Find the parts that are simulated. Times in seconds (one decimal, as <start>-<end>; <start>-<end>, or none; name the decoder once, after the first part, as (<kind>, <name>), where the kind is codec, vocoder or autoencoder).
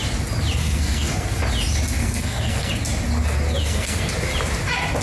0.6-1.4 (codec, SNAC); 2.0-2.7; 3.6-4.1